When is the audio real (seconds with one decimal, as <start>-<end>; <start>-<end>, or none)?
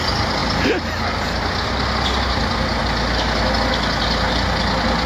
0.0-5.1